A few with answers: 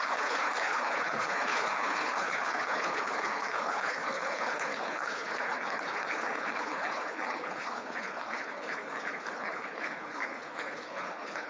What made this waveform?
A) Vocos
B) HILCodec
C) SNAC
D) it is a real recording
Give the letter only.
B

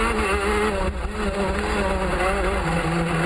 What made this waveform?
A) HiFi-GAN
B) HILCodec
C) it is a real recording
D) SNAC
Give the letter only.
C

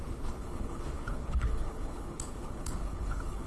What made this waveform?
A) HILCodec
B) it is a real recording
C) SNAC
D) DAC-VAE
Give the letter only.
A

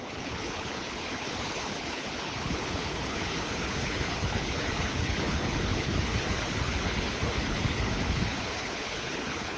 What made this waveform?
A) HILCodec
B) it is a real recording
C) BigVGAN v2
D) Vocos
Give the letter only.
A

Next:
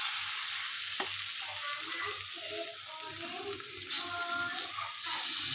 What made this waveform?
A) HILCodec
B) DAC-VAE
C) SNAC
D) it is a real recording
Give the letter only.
D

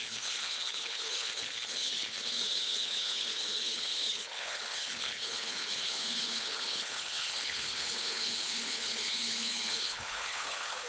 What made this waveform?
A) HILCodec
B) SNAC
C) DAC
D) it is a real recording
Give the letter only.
A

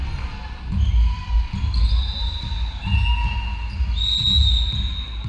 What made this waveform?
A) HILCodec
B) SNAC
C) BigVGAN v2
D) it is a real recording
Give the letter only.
D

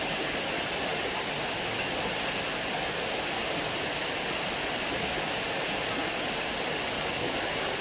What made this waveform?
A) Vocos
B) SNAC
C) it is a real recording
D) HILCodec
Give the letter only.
C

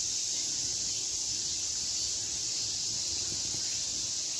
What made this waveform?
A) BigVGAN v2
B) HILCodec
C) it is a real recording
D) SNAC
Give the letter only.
C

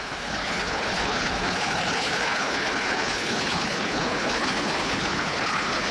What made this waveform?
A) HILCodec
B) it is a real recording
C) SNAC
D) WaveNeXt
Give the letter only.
A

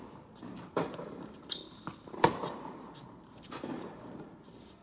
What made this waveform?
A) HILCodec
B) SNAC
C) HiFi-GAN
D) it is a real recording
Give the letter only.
D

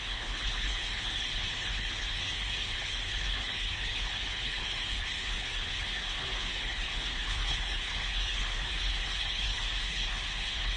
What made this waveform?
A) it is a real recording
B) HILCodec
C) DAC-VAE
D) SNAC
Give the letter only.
B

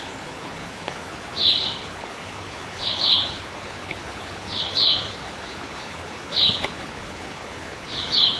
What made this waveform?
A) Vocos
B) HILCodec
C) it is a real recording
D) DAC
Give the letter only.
B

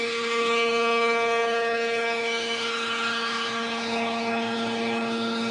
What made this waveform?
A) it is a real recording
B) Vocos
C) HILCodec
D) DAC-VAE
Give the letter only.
C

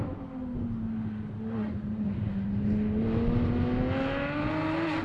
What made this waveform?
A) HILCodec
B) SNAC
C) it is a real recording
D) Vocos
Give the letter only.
C